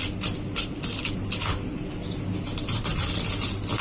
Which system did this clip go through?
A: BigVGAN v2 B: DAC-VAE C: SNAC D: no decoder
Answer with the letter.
D